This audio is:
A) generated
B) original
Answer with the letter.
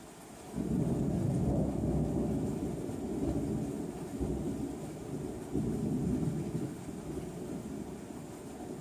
B